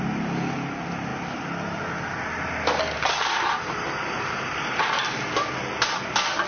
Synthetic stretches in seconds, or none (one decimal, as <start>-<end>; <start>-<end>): none